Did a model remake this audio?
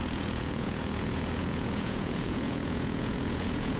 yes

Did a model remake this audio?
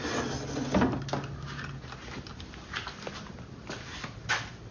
no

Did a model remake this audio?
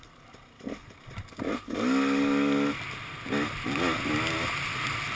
no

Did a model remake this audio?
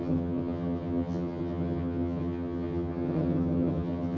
yes